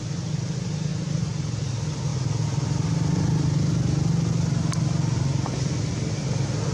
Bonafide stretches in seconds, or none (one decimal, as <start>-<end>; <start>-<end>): 0.0-0.9; 1.7-6.7